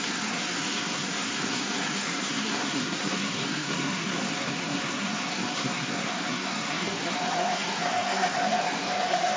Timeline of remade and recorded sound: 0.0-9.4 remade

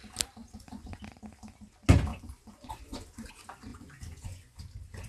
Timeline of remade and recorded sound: 0.0-0.4 recorded; 0.4-1.0 remade; 1.0-2.1 recorded; 2.1-3.3 remade; 3.3-3.7 recorded; 3.7-4.6 remade; 4.6-5.1 recorded

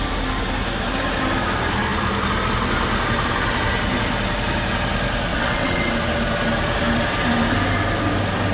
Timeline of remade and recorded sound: 0.0-5.3 recorded; 5.3-5.9 remade; 5.9-8.5 recorded

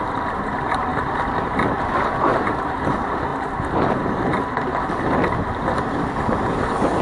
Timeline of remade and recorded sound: 0.0-7.0 remade